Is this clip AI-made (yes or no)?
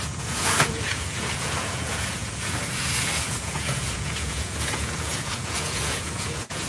yes